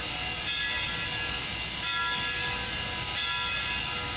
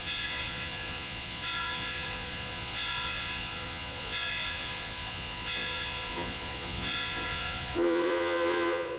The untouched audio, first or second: first